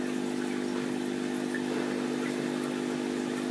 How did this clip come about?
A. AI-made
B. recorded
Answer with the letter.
B